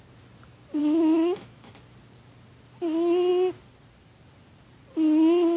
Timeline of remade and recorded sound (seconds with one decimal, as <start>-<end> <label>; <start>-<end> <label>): 0.0-0.8 recorded; 0.8-1.7 remade; 1.7-5.6 recorded